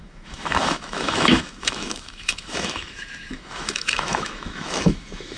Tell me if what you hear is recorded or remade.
remade